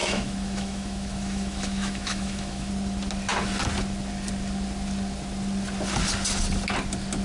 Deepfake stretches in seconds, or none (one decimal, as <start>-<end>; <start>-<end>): 0.0-2.7